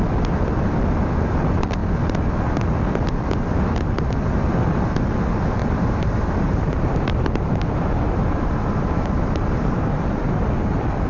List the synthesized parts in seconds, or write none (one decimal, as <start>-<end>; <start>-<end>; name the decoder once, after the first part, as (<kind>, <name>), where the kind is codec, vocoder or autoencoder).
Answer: 5.6-10.2 (vocoder, BigVGAN v2)